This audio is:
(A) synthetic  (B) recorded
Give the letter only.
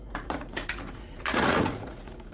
A